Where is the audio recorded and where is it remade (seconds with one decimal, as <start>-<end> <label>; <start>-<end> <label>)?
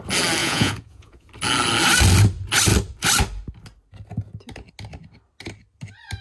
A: 0.0-0.4 recorded; 0.4-1.3 remade; 1.3-6.2 recorded